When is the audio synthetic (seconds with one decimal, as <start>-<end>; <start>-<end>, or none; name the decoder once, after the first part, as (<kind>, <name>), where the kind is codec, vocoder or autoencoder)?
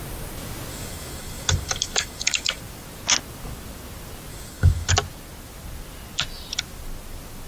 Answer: 0.7-2.6 (codec, DAC); 4.3-4.9